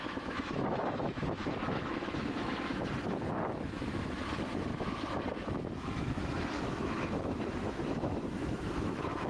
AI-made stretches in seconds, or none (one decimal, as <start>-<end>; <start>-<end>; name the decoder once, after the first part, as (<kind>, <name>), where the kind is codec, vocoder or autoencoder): 0.0-4.7 (autoencoder, DAC-VAE); 5.5-9.3